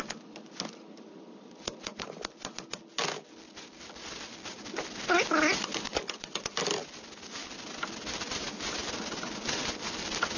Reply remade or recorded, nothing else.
recorded